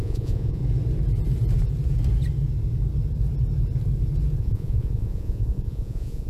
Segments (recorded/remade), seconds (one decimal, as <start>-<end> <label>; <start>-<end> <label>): 0.0-0.6 remade; 0.6-4.4 recorded; 4.4-6.3 remade